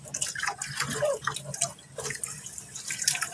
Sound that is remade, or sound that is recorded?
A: recorded